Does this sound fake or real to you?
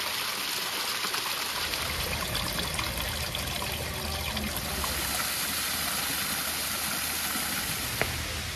real